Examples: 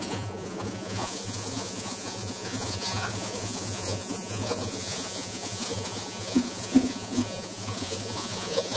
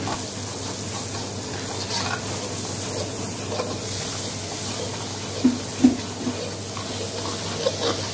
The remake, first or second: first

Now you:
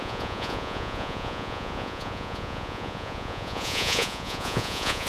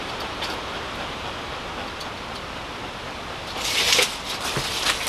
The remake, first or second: first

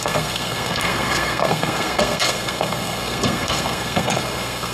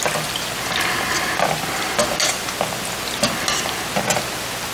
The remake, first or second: first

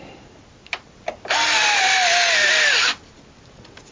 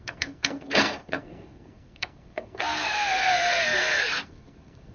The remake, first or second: second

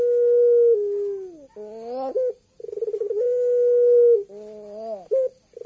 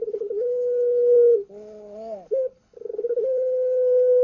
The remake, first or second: second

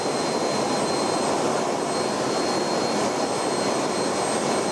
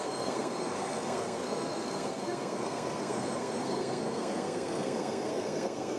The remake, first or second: second